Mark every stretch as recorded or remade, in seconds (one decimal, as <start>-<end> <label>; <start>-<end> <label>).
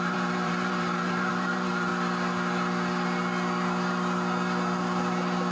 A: 0.0-1.9 remade; 1.9-5.5 recorded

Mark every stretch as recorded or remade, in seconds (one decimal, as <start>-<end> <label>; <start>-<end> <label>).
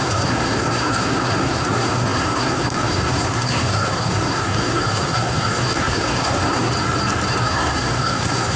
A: 0.0-6.7 remade; 6.7-7.4 recorded; 7.4-8.6 remade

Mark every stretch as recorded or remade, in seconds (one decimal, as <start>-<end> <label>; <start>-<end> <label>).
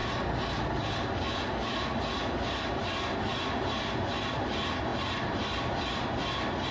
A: 0.0-6.7 recorded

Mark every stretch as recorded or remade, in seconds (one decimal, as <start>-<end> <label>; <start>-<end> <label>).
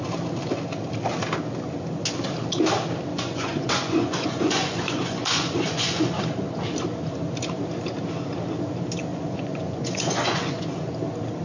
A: 0.0-3.1 recorded; 3.1-6.2 remade; 6.2-9.1 recorded; 9.1-10.9 remade; 10.9-11.4 recorded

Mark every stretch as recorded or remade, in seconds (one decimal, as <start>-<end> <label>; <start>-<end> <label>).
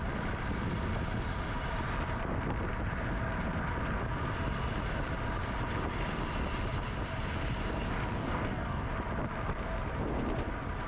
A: 0.0-8.2 recorded; 8.2-8.9 remade; 8.9-10.9 recorded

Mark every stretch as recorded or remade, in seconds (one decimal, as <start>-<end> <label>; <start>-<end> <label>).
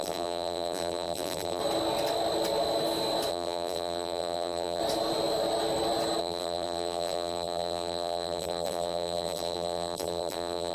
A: 0.0-1.6 remade; 1.6-3.3 recorded; 3.3-4.8 remade; 4.8-6.2 recorded; 6.2-10.7 remade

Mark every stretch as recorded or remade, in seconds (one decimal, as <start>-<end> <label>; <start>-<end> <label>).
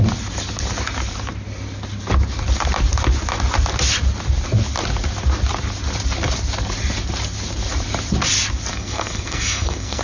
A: 0.0-8.7 recorded; 8.7-10.0 remade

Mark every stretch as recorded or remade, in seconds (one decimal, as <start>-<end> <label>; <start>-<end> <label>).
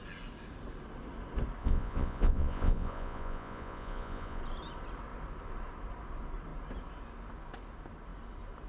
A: 0.0-1.6 recorded; 1.6-4.4 remade; 4.4-8.7 recorded